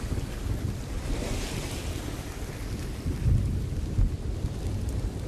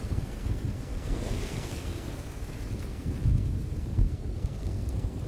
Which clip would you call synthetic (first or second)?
second